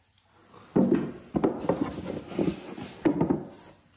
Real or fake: real